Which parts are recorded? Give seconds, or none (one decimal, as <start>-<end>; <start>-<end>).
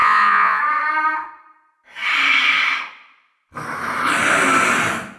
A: 0.6-5.2